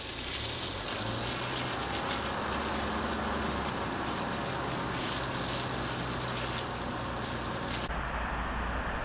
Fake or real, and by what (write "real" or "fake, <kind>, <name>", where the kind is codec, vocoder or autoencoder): real